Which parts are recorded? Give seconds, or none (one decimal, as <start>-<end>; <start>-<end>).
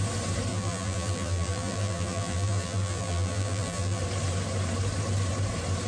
0.0-0.5; 4.0-5.9